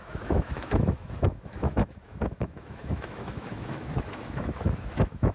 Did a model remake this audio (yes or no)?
yes